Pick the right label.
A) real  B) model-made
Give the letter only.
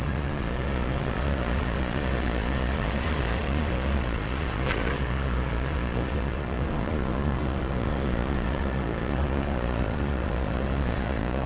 B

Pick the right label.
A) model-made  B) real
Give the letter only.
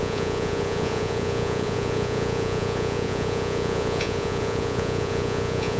A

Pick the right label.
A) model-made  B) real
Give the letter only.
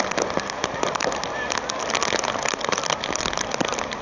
B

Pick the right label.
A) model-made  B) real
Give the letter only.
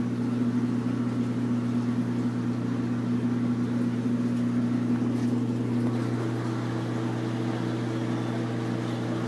B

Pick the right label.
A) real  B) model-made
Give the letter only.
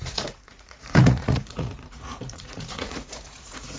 B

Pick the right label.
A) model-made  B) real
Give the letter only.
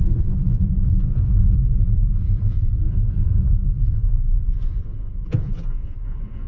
A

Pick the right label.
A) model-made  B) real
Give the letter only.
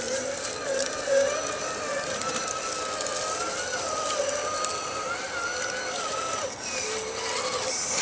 B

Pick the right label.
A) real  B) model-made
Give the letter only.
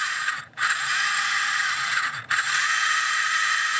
B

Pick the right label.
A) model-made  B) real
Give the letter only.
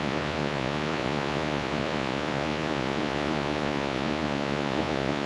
A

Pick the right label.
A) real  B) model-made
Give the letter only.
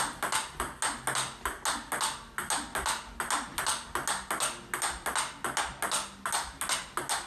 A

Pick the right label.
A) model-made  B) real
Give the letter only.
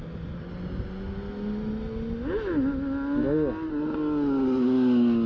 B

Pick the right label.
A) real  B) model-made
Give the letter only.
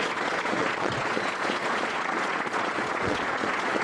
B